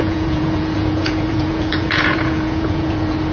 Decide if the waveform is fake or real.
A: fake